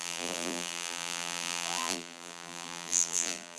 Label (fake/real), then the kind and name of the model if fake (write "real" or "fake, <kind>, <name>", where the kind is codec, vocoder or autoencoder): fake, vocoder, BigVGAN v2